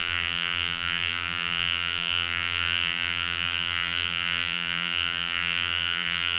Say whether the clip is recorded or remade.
remade